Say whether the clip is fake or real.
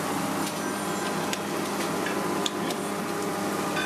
real